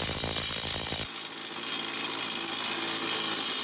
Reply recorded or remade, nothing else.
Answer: recorded